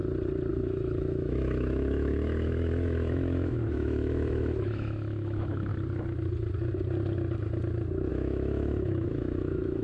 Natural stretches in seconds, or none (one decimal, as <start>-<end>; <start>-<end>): 0.0-0.5; 5.7-8.1